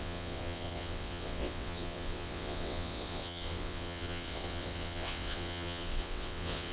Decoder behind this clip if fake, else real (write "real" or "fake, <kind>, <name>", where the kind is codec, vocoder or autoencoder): fake, vocoder, WaveNeXt